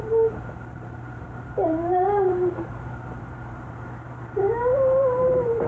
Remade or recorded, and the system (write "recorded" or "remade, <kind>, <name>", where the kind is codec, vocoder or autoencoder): remade, vocoder, BigVGAN v2